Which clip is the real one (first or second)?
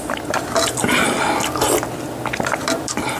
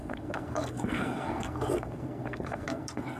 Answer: first